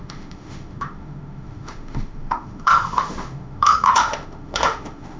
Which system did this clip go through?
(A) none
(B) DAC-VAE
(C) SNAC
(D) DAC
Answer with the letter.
B